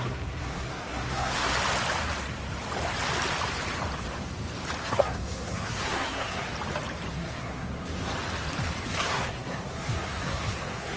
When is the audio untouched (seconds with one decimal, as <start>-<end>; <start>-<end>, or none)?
1.5-4.8; 6.5-7.1; 8.1-8.9